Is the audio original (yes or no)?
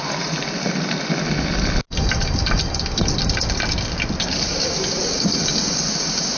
yes